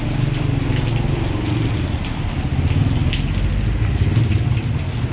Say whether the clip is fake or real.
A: real